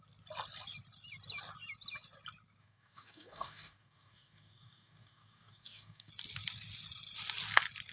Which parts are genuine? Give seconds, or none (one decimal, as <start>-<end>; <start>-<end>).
0.0-2.6; 6.1-7.9